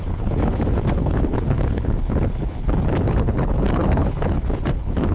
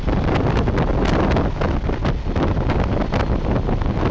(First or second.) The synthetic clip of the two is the first